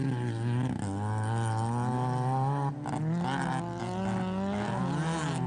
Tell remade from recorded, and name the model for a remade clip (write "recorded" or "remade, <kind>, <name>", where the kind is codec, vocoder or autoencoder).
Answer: recorded